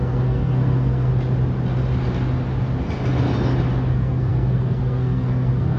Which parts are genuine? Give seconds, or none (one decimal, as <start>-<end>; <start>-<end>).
1.1-3.9